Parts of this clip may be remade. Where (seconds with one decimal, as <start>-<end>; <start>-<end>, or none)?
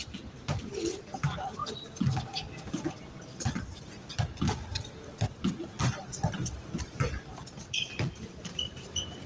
none